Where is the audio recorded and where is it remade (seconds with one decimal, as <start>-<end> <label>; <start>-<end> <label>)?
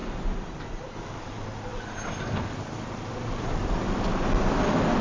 0.0-1.0 remade; 1.0-5.0 recorded